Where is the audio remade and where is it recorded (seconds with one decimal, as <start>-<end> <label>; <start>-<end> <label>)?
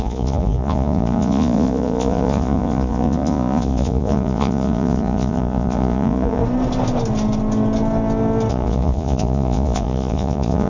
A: 0.0-6.4 remade; 6.4-8.5 recorded; 8.5-10.7 remade